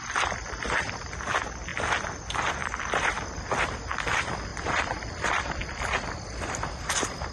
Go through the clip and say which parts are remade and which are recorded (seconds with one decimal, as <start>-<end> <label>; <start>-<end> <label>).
0.0-2.6 recorded; 2.6-3.6 remade; 3.6-4.5 recorded; 4.5-7.3 remade